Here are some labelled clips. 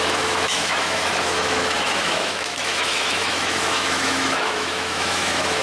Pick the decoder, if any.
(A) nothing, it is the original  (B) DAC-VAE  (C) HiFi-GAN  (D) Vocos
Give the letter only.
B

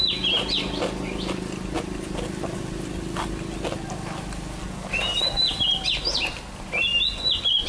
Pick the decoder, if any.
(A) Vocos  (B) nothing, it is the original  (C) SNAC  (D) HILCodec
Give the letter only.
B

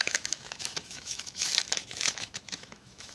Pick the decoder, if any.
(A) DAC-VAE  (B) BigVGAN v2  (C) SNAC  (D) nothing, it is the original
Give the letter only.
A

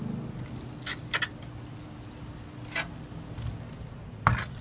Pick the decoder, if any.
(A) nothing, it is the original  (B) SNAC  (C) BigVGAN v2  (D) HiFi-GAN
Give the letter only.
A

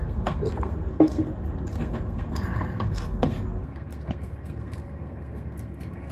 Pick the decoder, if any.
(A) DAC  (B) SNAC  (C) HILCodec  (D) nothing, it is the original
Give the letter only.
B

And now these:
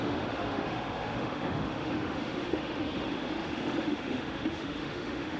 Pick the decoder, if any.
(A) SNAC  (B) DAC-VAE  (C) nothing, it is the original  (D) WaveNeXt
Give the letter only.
B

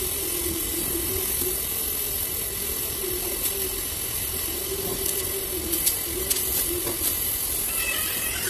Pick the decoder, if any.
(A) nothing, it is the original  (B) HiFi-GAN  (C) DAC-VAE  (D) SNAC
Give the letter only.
A